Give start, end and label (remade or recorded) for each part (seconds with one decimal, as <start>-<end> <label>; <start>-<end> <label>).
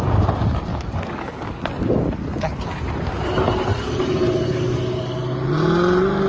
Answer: 0.0-0.7 recorded; 0.7-1.6 remade; 1.6-6.3 recorded